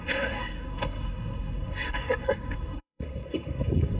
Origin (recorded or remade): remade